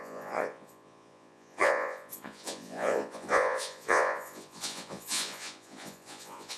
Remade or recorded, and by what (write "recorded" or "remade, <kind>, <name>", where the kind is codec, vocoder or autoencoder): remade, vocoder, Vocos